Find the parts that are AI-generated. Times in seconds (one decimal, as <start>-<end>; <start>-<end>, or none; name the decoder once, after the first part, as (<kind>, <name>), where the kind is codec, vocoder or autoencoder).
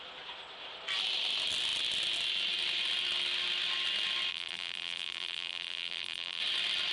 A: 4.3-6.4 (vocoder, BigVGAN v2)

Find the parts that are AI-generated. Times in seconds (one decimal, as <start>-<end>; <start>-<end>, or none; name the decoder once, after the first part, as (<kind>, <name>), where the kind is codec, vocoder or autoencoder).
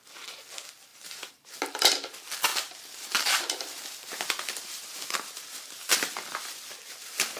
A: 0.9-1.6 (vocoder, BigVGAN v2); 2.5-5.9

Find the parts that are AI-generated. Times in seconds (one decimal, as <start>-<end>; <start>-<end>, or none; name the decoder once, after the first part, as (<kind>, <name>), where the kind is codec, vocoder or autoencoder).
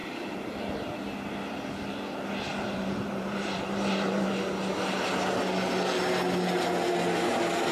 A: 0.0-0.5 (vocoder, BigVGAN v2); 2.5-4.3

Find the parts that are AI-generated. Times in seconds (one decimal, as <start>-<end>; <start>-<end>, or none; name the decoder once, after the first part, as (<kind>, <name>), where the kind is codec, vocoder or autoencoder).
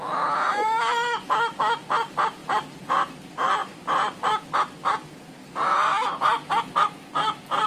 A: none